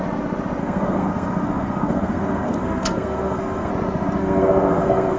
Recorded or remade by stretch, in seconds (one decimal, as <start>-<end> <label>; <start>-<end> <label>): 0.0-0.6 recorded; 0.6-3.7 remade; 3.7-4.2 recorded; 4.2-5.2 remade